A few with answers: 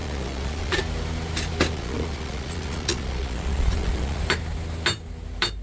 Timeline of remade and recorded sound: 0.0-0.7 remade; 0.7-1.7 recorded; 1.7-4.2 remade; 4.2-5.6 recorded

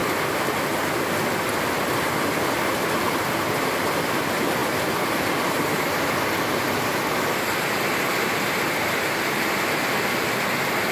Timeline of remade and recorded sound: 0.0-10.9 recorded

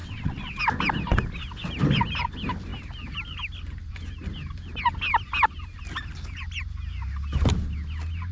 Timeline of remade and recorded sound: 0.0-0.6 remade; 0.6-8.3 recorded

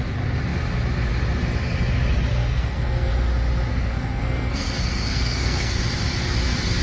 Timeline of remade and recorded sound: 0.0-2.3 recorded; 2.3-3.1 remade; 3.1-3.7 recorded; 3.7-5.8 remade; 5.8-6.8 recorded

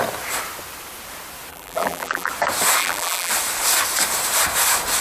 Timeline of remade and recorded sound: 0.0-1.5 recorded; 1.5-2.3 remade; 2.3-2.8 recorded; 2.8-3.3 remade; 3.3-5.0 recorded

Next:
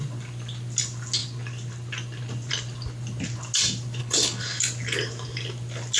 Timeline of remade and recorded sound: 0.0-4.0 recorded; 4.0-4.6 remade; 4.6-6.0 recorded

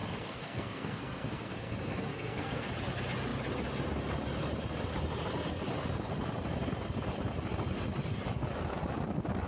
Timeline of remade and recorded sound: 0.0-1.7 remade; 1.7-2.1 recorded; 2.1-2.7 remade; 2.7-9.5 recorded